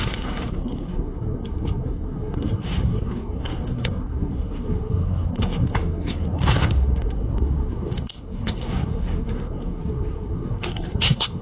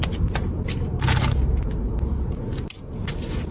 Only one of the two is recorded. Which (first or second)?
second